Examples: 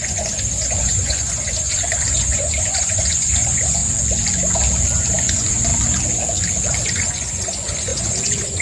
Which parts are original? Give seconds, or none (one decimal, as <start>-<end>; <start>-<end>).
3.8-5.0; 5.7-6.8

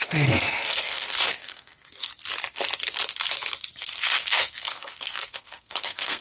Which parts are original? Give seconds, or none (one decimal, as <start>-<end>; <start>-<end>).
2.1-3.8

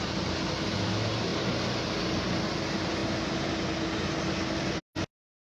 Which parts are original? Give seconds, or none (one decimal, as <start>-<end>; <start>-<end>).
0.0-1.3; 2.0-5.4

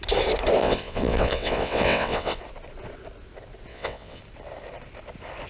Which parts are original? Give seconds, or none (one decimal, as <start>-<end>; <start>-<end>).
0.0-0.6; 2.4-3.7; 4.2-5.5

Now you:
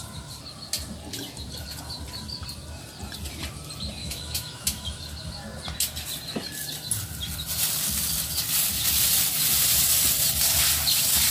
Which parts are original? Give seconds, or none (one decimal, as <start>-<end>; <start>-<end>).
0.0-4.0; 5.0-11.3

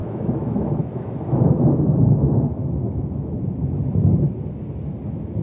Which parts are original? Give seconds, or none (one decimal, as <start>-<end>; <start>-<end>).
1.7-5.4